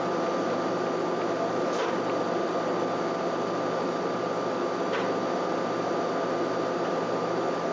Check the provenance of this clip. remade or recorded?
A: recorded